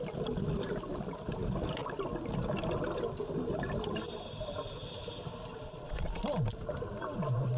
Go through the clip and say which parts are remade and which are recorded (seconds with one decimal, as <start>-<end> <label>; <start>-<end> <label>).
0.0-5.5 recorded; 5.5-6.1 remade; 6.1-7.6 recorded